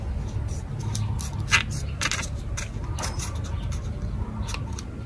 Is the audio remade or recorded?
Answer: recorded